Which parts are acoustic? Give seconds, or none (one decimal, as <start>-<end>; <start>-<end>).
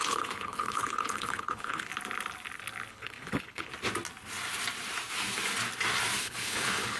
1.9-2.9; 3.7-6.2